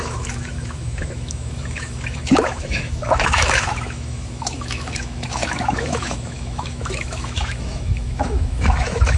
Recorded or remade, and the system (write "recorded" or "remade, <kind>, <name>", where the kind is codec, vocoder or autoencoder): remade, autoencoder, DAC-VAE